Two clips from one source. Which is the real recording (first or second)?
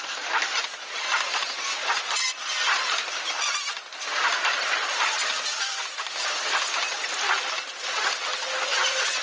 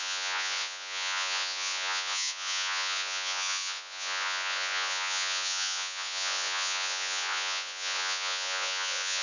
first